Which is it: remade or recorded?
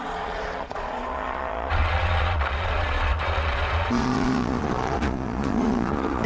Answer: remade